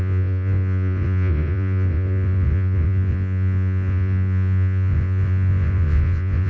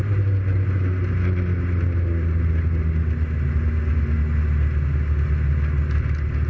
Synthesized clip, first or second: first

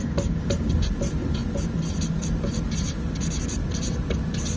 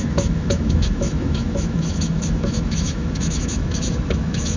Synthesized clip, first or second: second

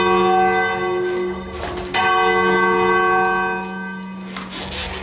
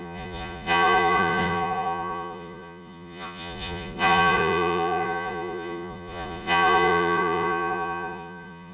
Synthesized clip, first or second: second